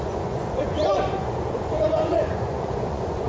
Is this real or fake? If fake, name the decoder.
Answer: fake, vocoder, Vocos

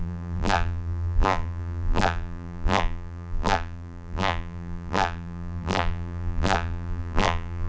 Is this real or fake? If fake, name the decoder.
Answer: fake, vocoder, BigVGAN v2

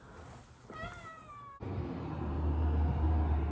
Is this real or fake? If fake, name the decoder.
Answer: real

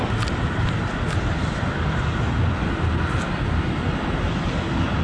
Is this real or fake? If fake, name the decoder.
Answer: real